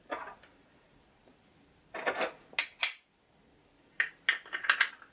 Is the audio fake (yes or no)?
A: no